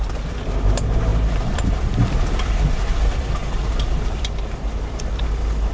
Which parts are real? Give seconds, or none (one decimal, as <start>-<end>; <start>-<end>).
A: 0.0-5.7